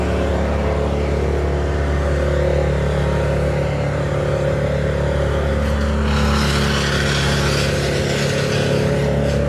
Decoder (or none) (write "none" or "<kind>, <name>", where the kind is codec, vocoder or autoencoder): none